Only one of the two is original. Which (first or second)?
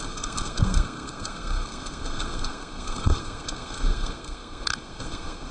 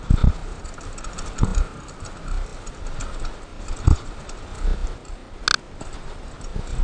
second